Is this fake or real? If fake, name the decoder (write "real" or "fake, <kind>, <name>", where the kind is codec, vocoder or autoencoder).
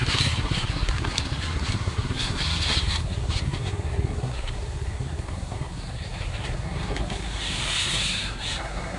fake, codec, SNAC